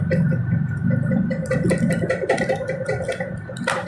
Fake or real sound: real